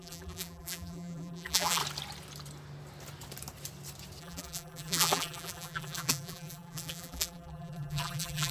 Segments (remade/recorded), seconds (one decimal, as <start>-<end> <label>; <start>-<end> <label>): 0.0-1.8 remade; 1.8-4.2 recorded; 4.2-8.5 remade